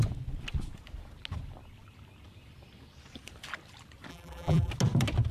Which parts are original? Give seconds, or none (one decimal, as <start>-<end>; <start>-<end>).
0.0-4.1; 4.7-5.3